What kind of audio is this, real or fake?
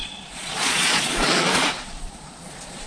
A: fake